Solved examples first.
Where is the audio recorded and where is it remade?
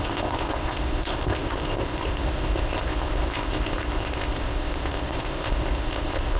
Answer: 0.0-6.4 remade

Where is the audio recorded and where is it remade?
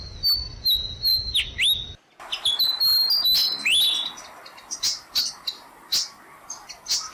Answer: 0.0-7.1 recorded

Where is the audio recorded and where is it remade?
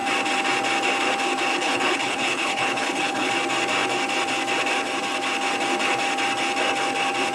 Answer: 0.0-1.5 recorded; 1.5-3.3 remade; 3.3-7.3 recorded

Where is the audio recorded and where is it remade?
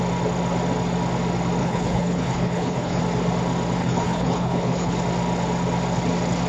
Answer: 0.0-1.6 recorded; 1.6-3.0 remade; 3.0-3.8 recorded; 3.8-4.9 remade; 4.9-6.5 recorded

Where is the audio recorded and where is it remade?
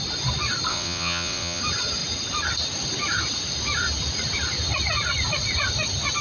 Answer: 0.0-0.7 recorded; 0.7-1.6 remade; 1.6-6.2 recorded